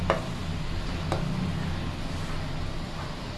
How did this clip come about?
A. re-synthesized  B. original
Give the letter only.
B